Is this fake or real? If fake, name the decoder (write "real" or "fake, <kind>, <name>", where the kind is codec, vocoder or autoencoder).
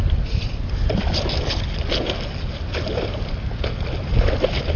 real